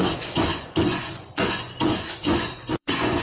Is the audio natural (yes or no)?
no